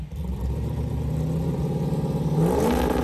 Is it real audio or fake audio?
real